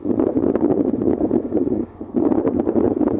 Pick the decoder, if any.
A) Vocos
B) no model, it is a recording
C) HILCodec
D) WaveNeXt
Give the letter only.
A